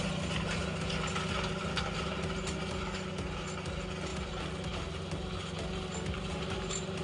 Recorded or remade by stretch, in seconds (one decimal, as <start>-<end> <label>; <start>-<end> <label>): 0.0-7.0 recorded